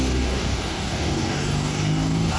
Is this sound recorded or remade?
remade